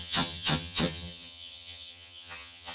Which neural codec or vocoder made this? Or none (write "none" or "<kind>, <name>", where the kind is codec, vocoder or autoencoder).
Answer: vocoder, HiFi-GAN